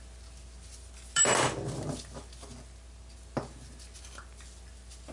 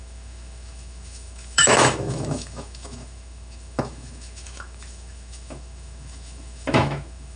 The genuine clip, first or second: first